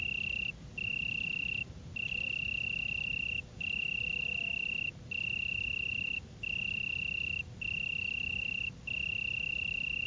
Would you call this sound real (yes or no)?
yes